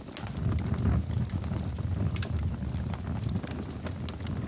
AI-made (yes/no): no